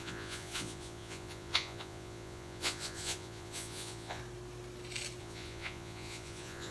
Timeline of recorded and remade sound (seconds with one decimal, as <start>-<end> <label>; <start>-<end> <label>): 0.0-4.2 remade; 4.2-5.2 recorded; 5.2-6.7 remade